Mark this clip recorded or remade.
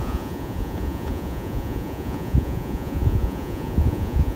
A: remade